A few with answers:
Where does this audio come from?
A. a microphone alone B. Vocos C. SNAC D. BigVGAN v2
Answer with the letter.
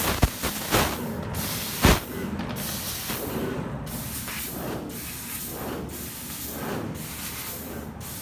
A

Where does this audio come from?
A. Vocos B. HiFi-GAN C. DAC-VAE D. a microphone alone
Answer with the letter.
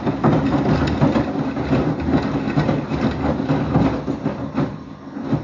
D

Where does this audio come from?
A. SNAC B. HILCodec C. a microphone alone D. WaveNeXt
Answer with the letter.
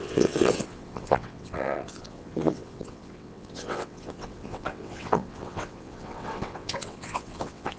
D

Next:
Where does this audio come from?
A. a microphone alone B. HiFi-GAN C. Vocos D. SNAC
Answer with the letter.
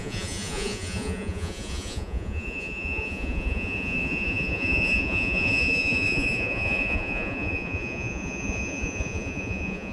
C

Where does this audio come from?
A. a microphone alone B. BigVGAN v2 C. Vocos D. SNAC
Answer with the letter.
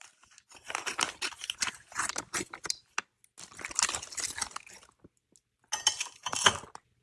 A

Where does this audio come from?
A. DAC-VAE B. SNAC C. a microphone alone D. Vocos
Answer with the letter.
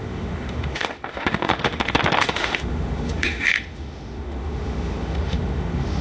A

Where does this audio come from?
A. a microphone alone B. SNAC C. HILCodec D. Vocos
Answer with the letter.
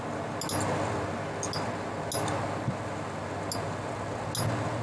A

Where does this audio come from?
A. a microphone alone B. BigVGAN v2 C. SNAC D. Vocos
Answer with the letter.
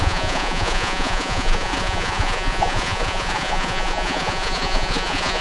D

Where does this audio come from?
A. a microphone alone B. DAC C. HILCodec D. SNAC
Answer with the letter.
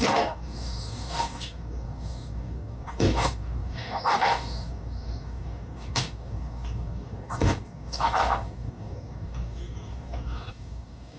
B